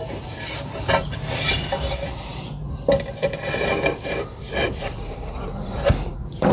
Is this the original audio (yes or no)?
no